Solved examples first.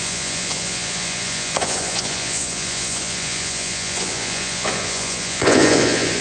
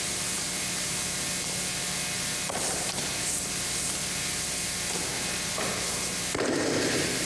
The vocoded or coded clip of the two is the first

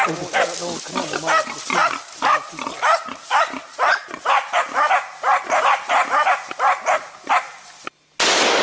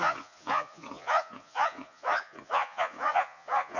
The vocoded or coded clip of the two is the second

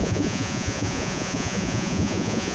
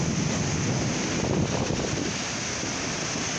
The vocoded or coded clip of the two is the first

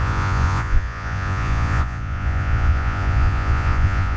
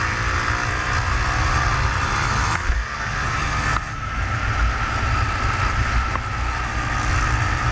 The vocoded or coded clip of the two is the first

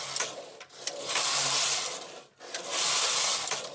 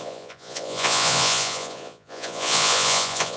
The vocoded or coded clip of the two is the second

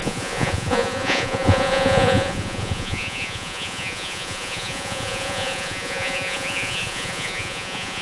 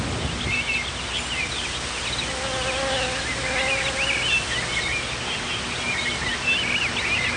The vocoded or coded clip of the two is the first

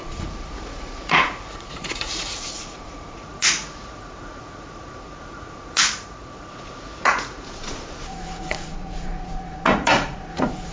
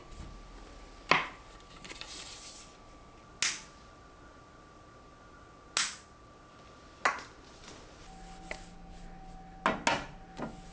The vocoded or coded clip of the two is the first